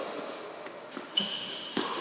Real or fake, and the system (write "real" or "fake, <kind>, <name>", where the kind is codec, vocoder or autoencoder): fake, autoencoder, DAC-VAE